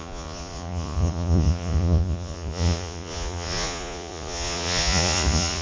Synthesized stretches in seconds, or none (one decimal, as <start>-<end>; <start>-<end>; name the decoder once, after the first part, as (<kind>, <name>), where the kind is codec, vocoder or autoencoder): 0.0-5.6 (vocoder, Vocos)